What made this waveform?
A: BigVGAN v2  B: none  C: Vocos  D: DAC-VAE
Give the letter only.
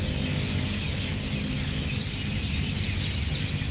B